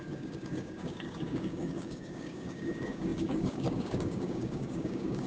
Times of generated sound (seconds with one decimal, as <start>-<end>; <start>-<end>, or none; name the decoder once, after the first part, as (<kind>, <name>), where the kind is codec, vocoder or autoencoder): 0.0-5.3 (codec, DAC)